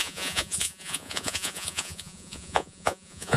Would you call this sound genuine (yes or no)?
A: no